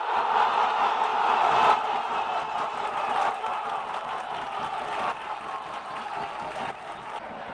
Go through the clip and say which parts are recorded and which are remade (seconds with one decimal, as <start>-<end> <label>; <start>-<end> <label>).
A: 0.0-7.5 recorded